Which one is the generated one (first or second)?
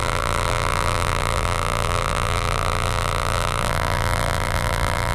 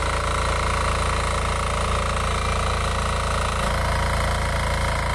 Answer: first